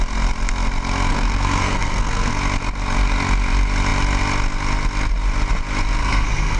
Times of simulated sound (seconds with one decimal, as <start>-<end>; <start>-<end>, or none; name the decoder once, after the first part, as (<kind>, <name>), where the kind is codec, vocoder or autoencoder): 1.1-2.3 (codec, SNAC); 6.0-6.6